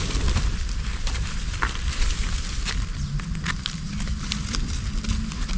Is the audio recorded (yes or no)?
yes